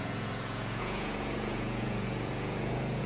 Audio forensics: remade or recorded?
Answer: remade